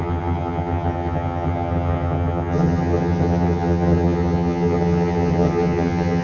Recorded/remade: remade